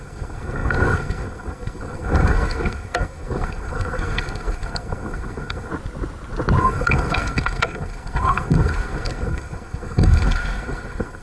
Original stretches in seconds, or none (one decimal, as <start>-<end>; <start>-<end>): 5.7-6.6